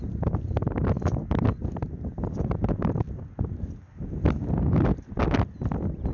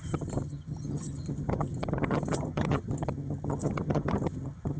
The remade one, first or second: second